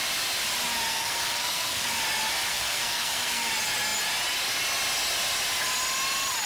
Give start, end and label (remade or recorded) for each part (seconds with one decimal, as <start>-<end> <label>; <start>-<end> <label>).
0.0-0.9 recorded; 0.9-2.0 remade; 2.0-2.5 recorded; 2.5-3.5 remade; 3.5-6.5 recorded